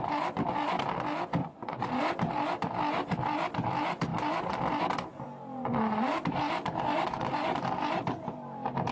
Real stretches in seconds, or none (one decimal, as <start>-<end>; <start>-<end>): 0.0-1.4; 1.9-8.9

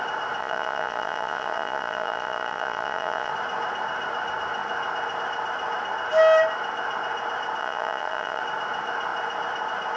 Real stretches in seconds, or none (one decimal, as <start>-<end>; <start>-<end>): 0.0-0.4; 3.3-7.6; 8.4-10.0

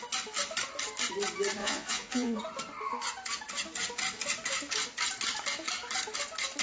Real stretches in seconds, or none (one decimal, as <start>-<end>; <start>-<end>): 0.0-1.6; 2.4-6.6

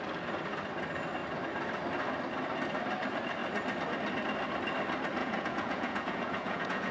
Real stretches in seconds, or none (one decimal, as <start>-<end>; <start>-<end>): 0.0-5.2